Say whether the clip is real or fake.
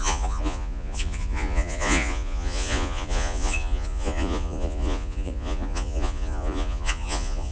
fake